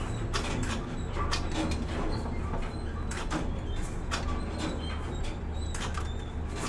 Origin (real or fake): real